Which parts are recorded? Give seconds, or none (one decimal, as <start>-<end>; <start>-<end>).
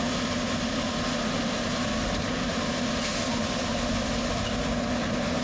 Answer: 0.0-5.4